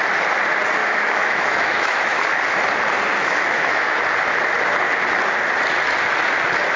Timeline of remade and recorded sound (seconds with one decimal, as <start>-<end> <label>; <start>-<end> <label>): 0.0-0.8 recorded; 0.8-2.3 remade; 2.3-3.2 recorded; 3.2-4.0 remade; 4.0-6.8 recorded